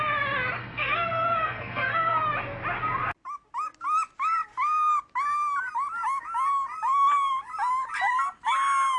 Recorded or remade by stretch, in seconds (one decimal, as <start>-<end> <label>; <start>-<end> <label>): 0.0-0.6 recorded; 0.6-2.2 remade; 2.2-9.0 recorded